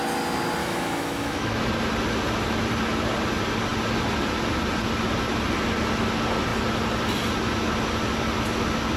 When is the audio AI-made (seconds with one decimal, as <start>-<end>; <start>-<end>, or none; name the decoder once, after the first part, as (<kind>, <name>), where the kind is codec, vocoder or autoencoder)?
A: 0.6-1.7 (autoencoder, DAC-VAE)